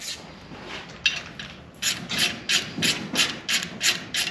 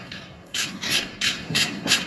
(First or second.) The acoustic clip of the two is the first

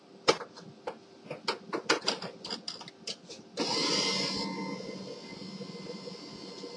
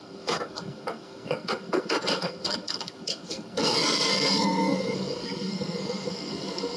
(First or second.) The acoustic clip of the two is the first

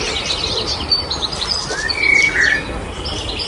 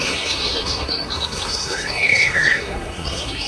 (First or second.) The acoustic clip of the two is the first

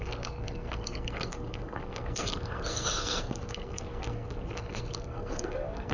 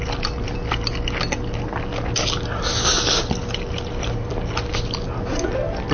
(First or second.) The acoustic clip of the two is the second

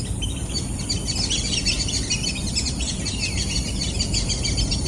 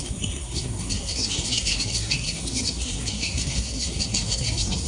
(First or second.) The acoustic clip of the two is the first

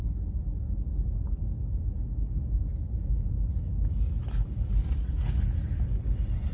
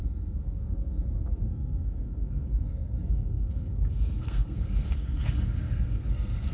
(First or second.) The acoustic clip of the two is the first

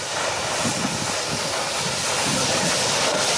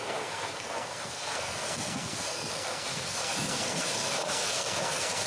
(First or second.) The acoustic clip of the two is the first